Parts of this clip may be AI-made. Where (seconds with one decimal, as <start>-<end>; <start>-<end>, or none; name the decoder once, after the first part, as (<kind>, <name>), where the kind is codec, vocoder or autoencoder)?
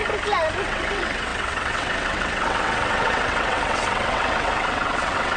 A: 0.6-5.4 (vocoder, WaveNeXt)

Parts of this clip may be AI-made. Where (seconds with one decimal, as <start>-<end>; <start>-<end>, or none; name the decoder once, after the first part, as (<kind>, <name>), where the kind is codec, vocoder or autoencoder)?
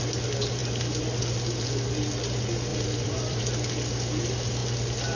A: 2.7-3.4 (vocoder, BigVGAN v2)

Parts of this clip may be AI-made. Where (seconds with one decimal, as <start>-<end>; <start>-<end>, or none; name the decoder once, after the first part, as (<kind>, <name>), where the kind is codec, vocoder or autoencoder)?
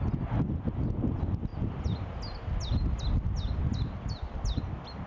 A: none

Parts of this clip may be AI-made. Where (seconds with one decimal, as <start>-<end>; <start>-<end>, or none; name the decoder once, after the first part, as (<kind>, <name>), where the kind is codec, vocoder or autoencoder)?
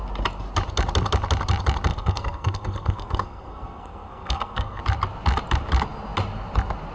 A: 1.9-4.8 (codec, SNAC)